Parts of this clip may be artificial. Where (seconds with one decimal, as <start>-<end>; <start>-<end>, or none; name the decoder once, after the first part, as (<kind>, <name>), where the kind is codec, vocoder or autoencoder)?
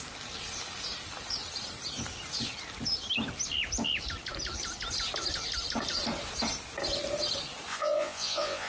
7.7-8.7 (vocoder, Vocos)